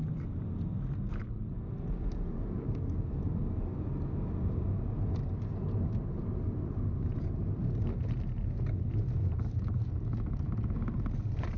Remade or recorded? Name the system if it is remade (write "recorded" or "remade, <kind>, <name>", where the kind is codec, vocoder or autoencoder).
recorded